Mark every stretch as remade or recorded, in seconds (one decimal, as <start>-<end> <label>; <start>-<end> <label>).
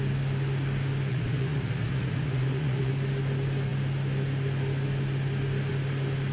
0.0-1.1 recorded; 1.1-2.9 remade; 2.9-6.3 recorded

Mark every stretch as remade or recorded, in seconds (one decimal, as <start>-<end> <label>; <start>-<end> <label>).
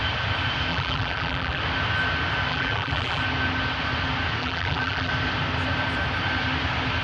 0.0-0.7 recorded; 0.7-1.6 remade; 1.6-2.5 recorded; 2.5-3.2 remade; 3.2-4.4 recorded; 4.4-5.1 remade; 5.1-7.0 recorded